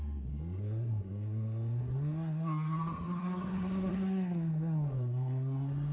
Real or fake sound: fake